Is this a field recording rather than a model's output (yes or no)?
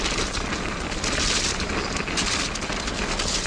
yes